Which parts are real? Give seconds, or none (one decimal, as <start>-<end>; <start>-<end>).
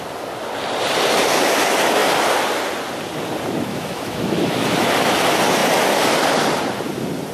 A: 0.0-3.7; 4.9-7.3